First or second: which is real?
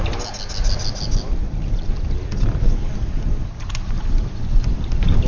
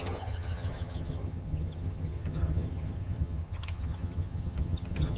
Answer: first